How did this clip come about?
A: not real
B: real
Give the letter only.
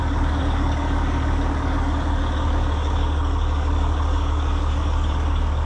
A